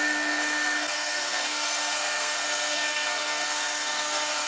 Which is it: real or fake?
fake